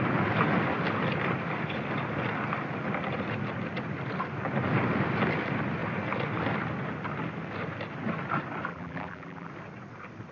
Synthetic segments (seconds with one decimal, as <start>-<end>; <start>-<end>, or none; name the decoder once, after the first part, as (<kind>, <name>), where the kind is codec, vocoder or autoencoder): 8.7-9.5 (vocoder, BigVGAN v2)